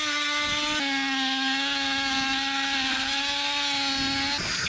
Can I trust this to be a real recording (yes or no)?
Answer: yes